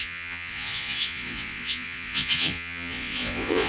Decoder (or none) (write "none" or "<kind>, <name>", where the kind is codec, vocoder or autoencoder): vocoder, Vocos